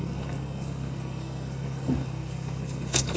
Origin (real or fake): fake